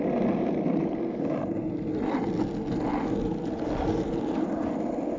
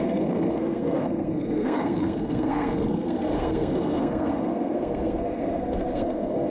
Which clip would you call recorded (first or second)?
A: first